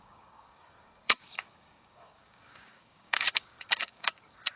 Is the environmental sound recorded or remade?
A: remade